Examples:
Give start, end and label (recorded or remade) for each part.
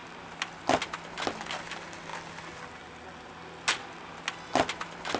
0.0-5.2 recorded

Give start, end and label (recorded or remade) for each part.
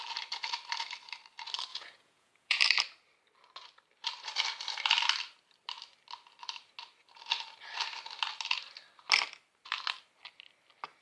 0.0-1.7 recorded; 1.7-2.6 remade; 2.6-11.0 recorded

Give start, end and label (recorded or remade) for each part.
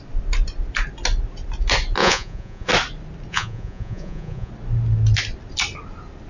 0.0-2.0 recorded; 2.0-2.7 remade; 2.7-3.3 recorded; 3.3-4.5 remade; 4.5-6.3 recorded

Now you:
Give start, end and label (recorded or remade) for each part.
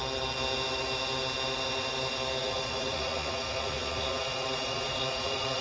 0.0-2.4 recorded; 2.4-5.6 remade